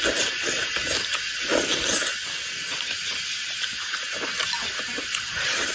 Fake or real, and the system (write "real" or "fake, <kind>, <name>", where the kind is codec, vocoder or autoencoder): real